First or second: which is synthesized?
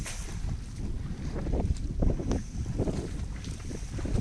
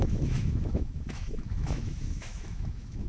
second